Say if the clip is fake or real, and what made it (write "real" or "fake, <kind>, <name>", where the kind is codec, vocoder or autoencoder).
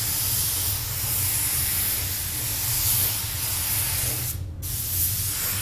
real